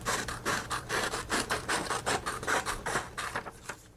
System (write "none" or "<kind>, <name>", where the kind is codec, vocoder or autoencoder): vocoder, BigVGAN v2